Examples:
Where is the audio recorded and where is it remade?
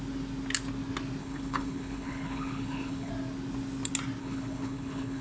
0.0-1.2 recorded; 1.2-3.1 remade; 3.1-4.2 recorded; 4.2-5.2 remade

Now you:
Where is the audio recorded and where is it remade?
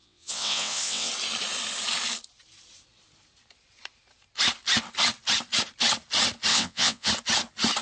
0.0-1.1 remade; 1.1-6.5 recorded; 6.5-7.1 remade; 7.1-7.8 recorded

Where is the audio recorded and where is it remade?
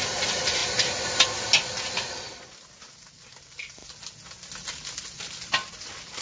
0.0-6.2 recorded